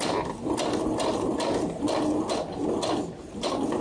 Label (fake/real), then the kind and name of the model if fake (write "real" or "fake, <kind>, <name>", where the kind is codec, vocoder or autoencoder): real